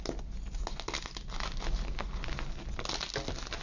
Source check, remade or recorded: recorded